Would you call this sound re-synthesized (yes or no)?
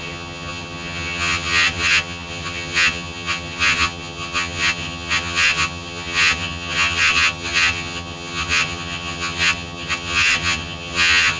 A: yes